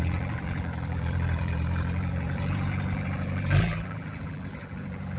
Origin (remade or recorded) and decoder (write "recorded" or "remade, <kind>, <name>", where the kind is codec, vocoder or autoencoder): remade, vocoder, BigVGAN v2